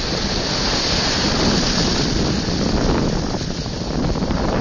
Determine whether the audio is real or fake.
real